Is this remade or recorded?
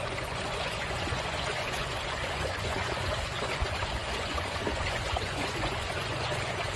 remade